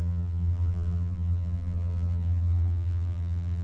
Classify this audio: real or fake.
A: fake